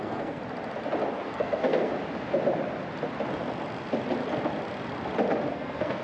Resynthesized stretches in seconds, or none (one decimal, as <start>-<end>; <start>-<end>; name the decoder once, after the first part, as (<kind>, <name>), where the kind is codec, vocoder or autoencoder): 0.0-0.4 (codec, SNAC); 1.1-1.9; 5.5-6.0